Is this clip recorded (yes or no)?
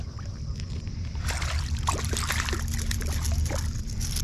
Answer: no